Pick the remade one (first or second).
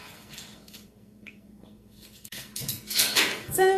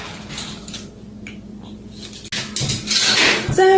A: first